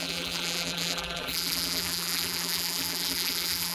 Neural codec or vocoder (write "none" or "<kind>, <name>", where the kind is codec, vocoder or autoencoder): vocoder, BigVGAN v2